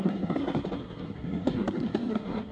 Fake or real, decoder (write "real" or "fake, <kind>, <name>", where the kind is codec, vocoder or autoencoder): fake, codec, SNAC